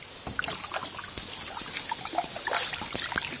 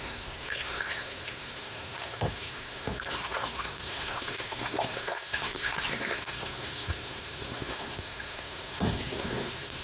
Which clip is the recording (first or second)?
first